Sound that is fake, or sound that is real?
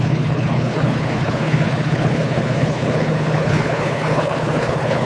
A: fake